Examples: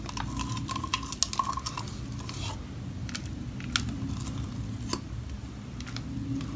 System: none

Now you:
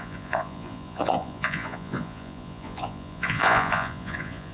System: vocoder, Vocos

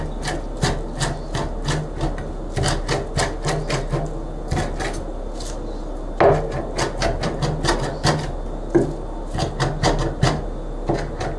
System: none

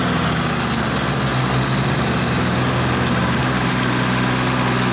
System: none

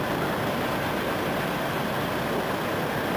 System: none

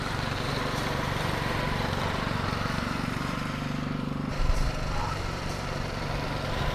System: vocoder, BigVGAN v2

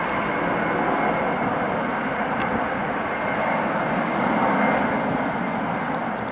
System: none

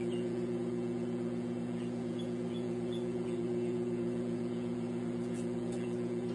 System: vocoder, Vocos